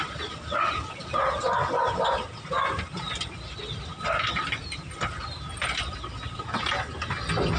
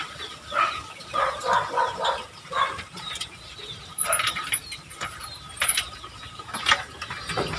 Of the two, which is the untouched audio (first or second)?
first